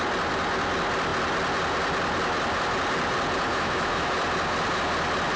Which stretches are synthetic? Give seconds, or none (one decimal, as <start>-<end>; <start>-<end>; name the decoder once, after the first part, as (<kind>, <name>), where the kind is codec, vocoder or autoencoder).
3.5-4.1 (autoencoder, DAC-VAE)